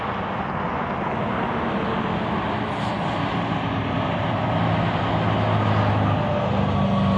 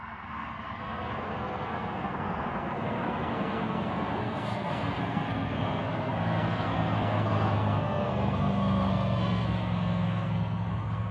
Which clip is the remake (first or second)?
second